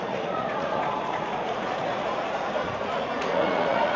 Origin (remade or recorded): remade